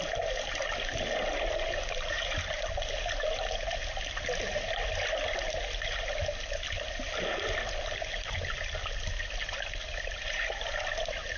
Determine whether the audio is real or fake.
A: real